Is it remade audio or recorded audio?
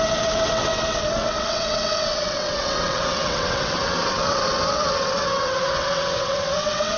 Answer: remade